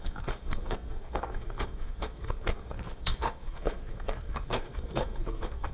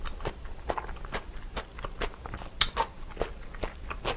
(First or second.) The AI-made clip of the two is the first